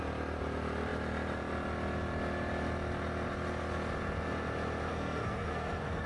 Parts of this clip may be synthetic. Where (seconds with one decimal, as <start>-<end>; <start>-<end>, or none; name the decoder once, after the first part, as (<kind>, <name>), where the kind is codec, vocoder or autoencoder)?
4.9-6.1 (codec, SNAC)